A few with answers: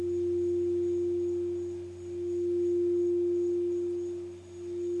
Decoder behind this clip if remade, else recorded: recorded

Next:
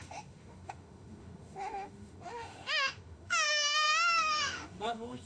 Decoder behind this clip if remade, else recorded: remade, autoencoder, DAC-VAE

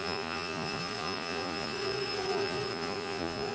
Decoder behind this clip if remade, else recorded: remade, vocoder, Vocos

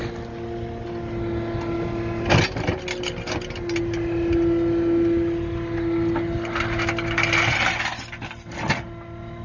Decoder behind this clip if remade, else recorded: recorded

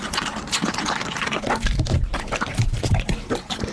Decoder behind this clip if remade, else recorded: recorded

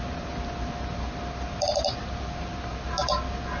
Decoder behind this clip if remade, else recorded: recorded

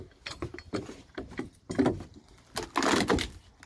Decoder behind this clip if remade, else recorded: recorded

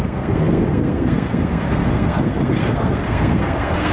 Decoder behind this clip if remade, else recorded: remade, codec, SNAC